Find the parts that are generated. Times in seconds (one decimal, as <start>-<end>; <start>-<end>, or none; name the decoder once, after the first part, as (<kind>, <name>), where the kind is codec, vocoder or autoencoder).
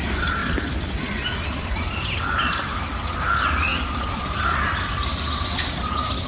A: none